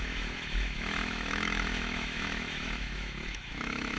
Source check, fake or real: fake